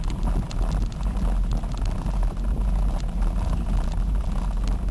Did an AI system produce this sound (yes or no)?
no